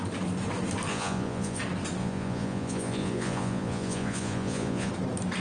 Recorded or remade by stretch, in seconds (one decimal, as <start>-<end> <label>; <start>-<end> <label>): 0.0-0.9 recorded; 0.9-1.6 remade; 1.6-2.0 recorded; 2.0-4.9 remade; 4.9-5.4 recorded